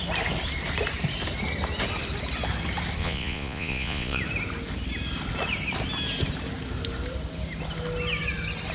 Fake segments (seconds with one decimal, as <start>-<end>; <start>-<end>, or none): 3.0-4.2